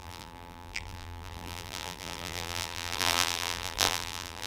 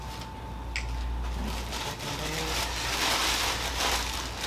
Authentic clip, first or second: second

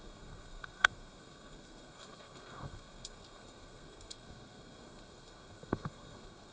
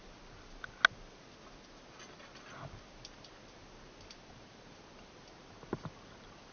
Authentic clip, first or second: second